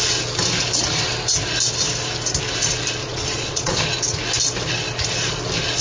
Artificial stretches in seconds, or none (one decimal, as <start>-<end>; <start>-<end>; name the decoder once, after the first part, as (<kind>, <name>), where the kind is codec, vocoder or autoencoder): 3.0-3.7 (vocoder, Vocos)